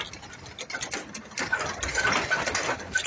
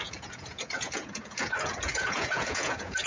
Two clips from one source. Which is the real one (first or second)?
first